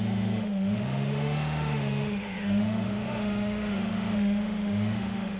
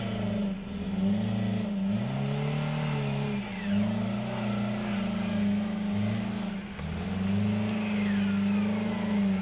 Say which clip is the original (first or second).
second